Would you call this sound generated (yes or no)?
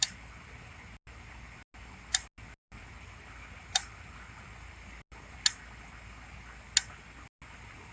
no